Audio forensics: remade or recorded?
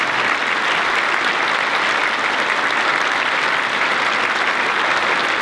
recorded